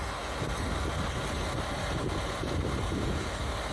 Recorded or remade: recorded